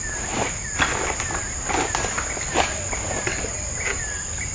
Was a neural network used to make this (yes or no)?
no